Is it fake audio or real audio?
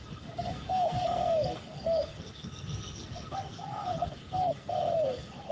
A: fake